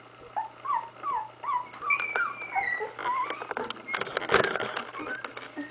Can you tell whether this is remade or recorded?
recorded